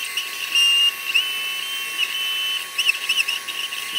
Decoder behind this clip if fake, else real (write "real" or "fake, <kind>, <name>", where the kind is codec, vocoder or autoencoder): real